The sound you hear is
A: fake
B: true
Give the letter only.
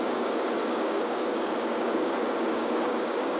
A